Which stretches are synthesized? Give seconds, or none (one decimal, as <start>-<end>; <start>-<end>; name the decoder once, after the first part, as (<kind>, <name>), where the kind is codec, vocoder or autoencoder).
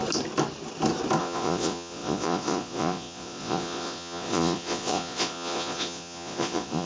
1.2-6.9 (vocoder, Vocos)